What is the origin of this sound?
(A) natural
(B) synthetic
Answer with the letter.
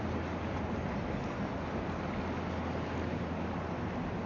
A